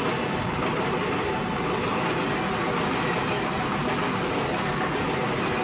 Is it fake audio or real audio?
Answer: real